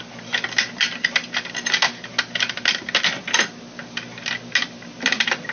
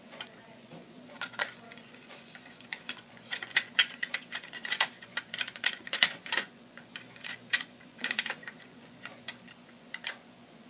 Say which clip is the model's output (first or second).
second